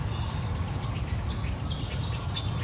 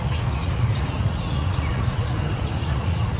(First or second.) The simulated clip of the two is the second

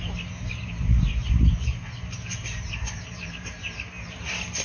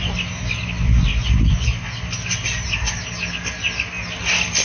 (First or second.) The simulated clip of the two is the first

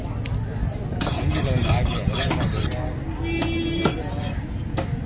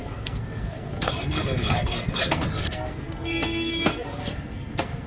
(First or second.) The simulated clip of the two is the second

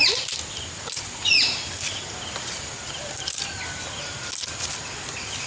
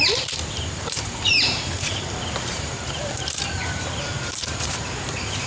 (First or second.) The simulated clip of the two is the second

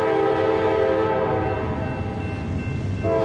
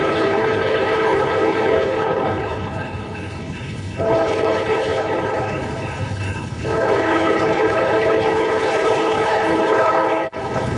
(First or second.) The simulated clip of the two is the second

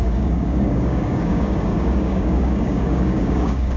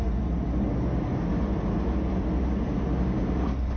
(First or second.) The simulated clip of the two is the first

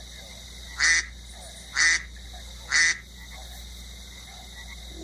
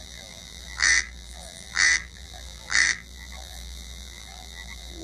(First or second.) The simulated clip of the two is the second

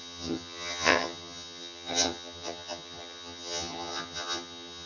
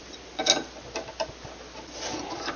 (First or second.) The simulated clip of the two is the first